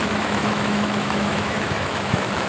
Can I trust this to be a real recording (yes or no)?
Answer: no